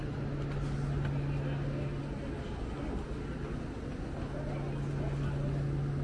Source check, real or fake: real